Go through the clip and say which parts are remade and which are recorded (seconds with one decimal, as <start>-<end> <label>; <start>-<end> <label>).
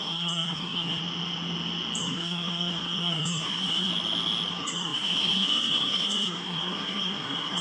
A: 0.0-1.0 remade; 1.0-2.0 recorded; 2.0-3.9 remade; 3.9-4.5 recorded; 4.5-7.6 remade